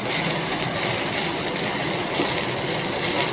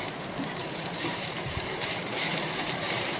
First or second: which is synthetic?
second